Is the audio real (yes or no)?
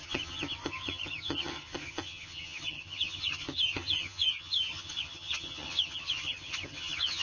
no